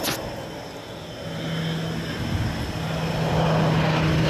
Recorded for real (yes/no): yes